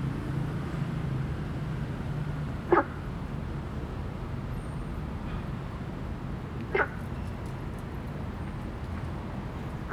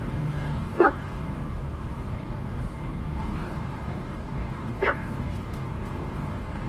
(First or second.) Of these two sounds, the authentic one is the first